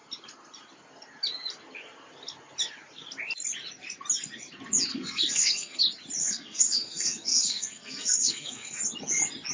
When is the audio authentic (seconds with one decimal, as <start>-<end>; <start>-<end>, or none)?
0.0-4.9; 5.8-6.2; 8.8-9.5